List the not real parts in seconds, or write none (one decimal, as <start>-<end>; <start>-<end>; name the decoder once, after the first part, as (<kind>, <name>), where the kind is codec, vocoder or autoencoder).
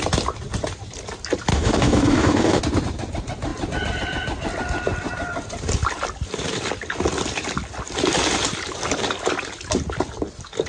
1.5-2.6 (codec, DAC)